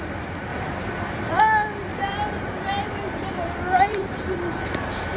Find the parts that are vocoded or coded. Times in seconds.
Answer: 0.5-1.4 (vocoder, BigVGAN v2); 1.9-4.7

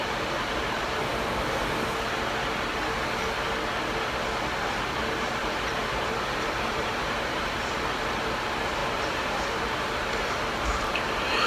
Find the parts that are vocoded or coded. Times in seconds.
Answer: 0.0-1.1 (vocoder, BigVGAN v2); 5.4-11.5

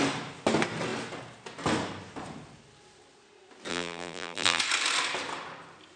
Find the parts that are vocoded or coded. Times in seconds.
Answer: 3.7-4.6 (vocoder, BigVGAN v2)

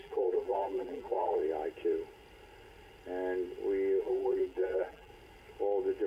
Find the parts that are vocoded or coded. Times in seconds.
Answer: 0.0-1.4 (vocoder, BigVGAN v2); 4.0-5.1